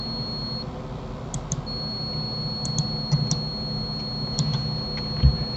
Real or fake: real